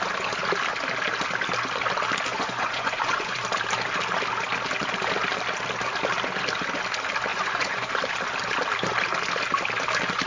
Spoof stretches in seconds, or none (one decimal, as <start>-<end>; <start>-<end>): 2.3-3.4; 7.3-8.0